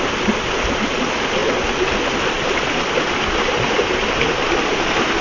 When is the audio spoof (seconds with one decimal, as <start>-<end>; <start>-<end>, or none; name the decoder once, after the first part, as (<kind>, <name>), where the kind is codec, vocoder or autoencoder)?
none